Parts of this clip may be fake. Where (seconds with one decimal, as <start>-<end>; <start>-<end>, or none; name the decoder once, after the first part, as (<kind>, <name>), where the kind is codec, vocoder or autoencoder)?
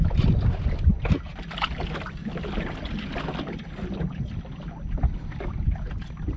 none